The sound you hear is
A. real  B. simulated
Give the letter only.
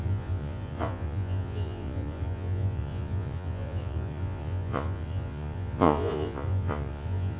B